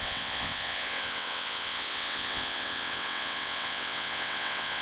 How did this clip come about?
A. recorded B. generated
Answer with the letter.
B